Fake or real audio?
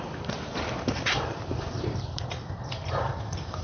fake